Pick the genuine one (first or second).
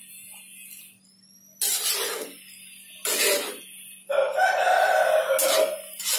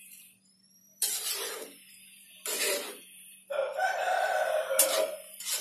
first